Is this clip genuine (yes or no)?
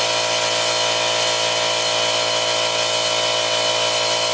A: yes